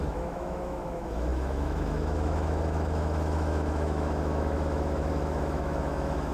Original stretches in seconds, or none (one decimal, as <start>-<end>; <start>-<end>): none